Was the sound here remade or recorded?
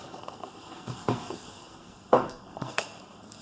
remade